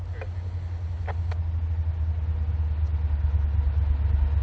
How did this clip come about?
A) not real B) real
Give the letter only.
B